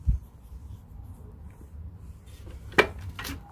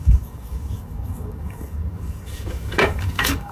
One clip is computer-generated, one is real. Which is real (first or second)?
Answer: first